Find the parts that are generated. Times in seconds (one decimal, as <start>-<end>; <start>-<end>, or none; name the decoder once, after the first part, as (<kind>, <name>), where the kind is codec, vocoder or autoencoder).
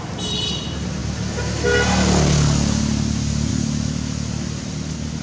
none